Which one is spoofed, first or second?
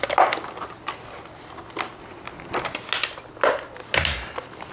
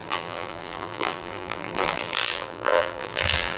second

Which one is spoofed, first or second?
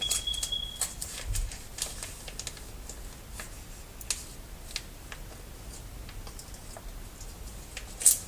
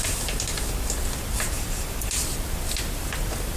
second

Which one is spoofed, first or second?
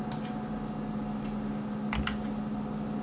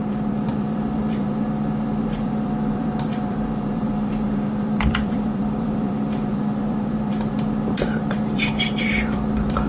second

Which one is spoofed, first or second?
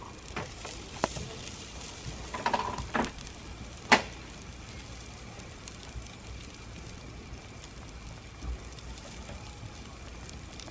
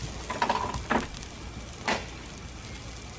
first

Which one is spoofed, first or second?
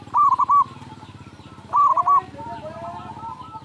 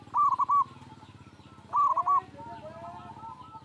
first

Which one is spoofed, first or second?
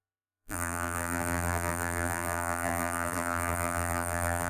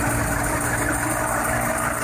first